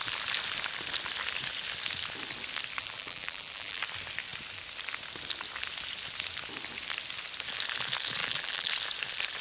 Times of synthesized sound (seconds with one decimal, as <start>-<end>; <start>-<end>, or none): 2.8-3.8; 8.2-8.7